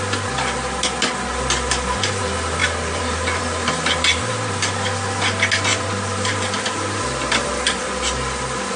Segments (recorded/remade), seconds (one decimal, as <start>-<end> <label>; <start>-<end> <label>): 0.0-2.6 recorded; 2.6-4.3 remade; 4.3-5.7 recorded; 5.7-7.8 remade; 7.8-8.8 recorded